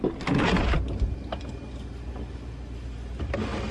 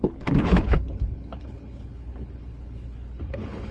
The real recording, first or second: first